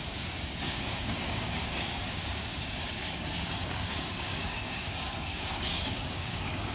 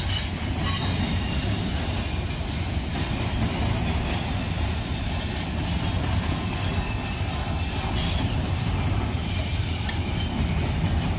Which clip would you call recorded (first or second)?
second